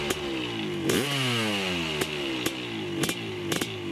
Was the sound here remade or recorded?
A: recorded